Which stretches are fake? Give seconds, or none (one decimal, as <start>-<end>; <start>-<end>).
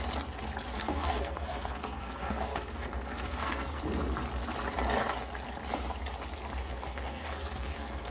0.8-3.8; 6.6-8.1